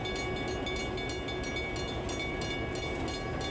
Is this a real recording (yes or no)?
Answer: yes